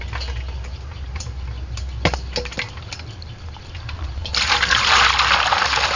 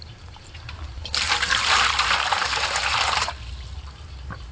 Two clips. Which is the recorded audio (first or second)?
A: first